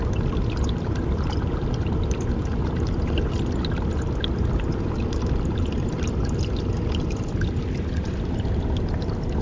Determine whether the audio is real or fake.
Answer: real